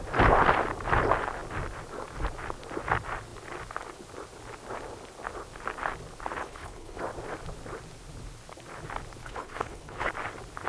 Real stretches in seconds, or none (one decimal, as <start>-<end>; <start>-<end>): 0.0-6.4; 7.0-9.2; 10.1-10.7